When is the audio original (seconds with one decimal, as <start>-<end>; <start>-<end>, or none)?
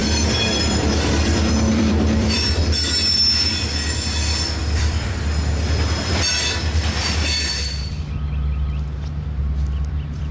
2.6-4.6; 5.2-10.3